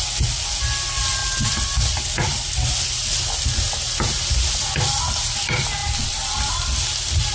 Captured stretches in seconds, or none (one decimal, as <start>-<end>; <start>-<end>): 0.0-7.3

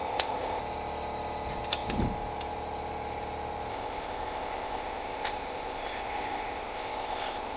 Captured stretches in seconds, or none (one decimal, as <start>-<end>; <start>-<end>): 0.6-3.7

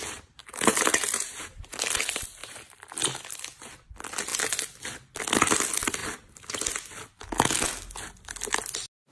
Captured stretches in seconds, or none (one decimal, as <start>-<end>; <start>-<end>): 0.0-0.4; 1.9-2.4; 3.0-9.1

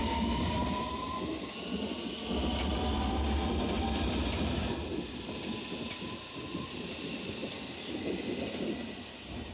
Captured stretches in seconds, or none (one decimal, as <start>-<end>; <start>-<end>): 0.0-9.5

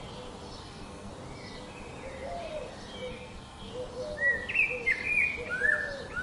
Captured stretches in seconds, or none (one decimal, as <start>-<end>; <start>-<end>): 0.0-0.6; 1.1-3.1; 3.7-6.2

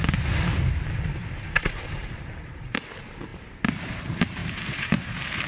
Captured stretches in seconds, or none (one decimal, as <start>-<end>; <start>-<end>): 0.0-1.2; 2.8-4.4

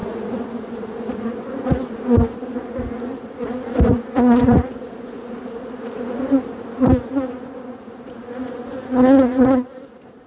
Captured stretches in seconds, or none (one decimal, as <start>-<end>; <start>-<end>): none